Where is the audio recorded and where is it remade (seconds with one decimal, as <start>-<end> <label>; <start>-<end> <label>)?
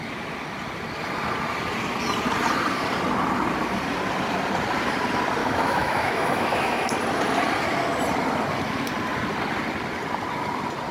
0.0-5.4 recorded; 5.4-6.9 remade; 6.9-10.9 recorded